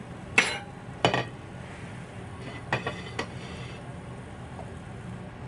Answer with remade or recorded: recorded